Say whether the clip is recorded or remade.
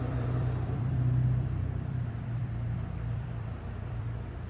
remade